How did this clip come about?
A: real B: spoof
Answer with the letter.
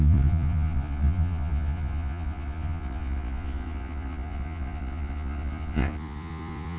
B